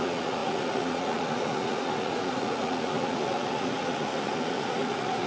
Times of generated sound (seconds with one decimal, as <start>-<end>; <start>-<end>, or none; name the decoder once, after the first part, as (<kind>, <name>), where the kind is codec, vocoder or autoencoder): 0.0-5.3 (vocoder, Vocos)